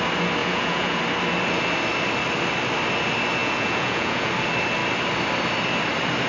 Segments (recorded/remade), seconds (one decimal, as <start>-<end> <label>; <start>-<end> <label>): 0.0-0.4 recorded; 0.4-1.0 remade; 1.0-3.4 recorded; 3.4-4.3 remade; 4.3-6.3 recorded